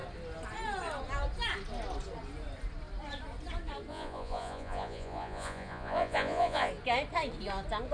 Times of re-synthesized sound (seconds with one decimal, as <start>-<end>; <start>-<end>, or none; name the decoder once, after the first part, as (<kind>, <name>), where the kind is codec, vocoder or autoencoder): 3.9-6.7 (vocoder, Vocos)